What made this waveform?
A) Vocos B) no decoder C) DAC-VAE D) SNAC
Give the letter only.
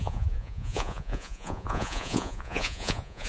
A